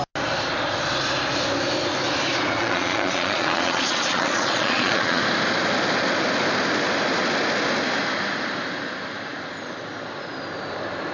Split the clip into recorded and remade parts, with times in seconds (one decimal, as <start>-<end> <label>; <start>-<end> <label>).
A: 0.0-2.6 recorded; 2.6-5.2 remade; 5.2-11.1 recorded